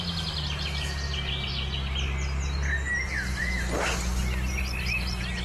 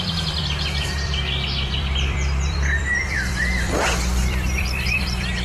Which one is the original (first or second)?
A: first